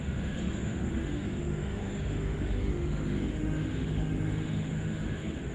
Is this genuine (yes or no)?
no